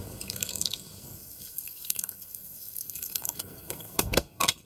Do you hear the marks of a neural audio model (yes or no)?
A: yes